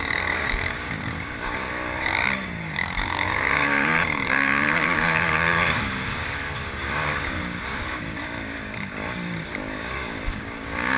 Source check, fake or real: fake